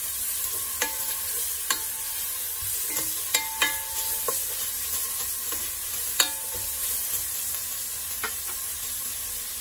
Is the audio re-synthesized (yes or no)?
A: no